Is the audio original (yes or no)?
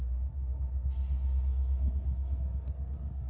no